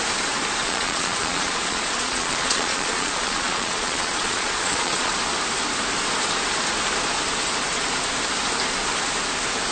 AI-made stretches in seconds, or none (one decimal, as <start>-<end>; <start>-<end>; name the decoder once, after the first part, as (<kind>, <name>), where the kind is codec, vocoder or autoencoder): 0.6-5.1 (vocoder, Vocos)